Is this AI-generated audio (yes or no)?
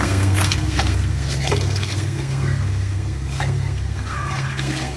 yes